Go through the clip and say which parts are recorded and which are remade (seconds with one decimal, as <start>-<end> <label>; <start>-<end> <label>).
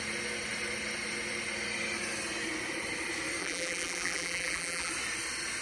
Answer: 0.0-3.4 recorded; 3.4-4.9 remade; 4.9-5.6 recorded